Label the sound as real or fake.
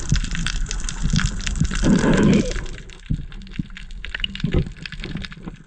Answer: real